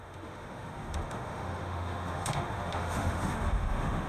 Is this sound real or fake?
fake